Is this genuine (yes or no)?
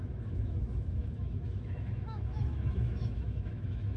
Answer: no